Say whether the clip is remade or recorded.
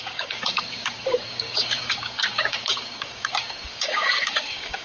remade